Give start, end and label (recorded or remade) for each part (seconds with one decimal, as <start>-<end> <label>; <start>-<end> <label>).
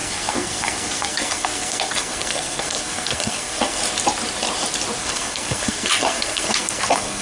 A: 0.0-3.8 remade; 3.8-5.0 recorded; 5.0-7.2 remade